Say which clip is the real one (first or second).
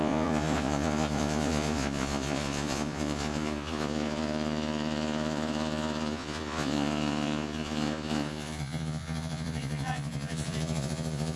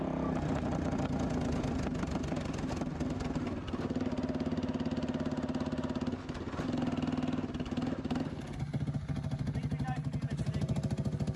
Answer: second